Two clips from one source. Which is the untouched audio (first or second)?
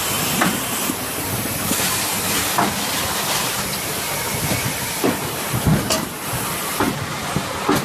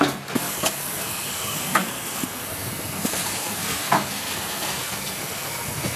first